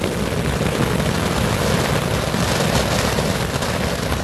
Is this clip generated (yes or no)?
no